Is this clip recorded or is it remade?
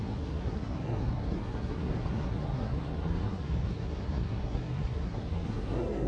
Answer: remade